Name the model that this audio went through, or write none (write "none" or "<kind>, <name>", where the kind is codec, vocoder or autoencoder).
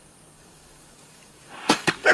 codec, DAC